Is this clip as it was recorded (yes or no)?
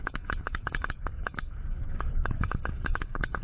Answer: no